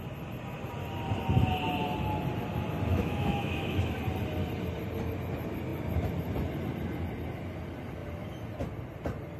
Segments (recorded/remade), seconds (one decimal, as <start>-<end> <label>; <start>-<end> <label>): 0.0-2.9 recorded; 2.9-4.0 remade; 4.0-9.4 recorded